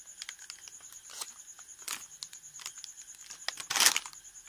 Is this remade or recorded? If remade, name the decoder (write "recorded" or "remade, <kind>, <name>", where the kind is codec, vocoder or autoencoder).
recorded